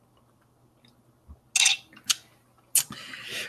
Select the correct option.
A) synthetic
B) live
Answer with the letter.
B